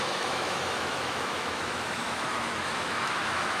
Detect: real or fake fake